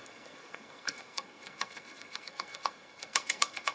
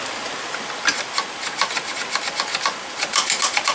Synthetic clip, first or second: first